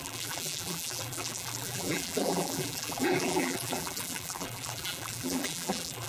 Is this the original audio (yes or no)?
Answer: no